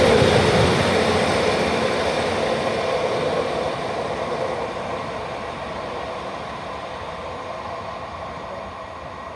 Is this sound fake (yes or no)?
yes